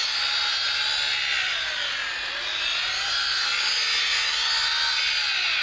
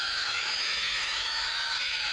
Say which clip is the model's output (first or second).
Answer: second